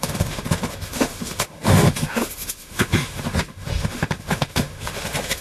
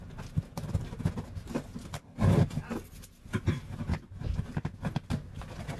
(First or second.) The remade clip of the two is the first